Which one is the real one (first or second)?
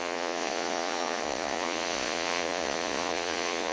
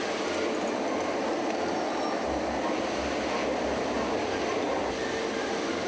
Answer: second